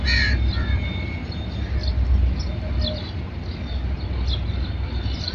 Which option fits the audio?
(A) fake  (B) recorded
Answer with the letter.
B